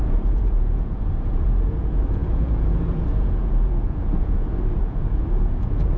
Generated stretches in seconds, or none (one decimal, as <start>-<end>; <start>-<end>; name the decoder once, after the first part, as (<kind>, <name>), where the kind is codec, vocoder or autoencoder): 0.0-6.0 (vocoder, Vocos)